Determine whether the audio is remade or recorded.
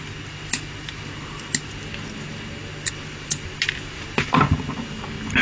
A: recorded